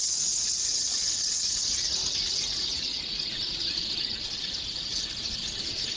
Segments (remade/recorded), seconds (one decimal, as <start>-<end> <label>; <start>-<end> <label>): 0.0-6.0 remade